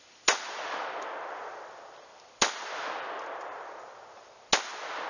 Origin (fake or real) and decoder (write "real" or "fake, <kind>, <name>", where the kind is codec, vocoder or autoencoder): real